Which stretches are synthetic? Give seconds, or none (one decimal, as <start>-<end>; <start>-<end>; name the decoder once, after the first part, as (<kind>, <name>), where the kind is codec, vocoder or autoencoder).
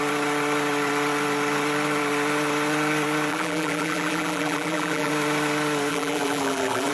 3.3-5.1 (vocoder, BigVGAN v2); 5.9-6.9